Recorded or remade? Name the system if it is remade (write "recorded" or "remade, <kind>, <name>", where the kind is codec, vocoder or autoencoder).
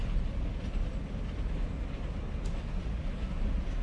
recorded